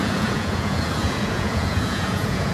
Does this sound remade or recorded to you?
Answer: remade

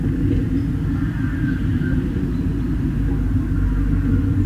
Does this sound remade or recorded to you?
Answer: recorded